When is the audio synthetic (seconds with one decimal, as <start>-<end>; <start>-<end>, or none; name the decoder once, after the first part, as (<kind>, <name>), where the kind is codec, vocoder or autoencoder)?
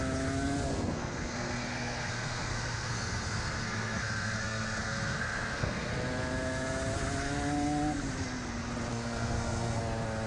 0.7-5.9 (codec, SNAC); 8.9-9.8